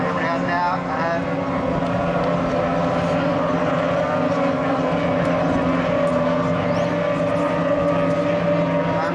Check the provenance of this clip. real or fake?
real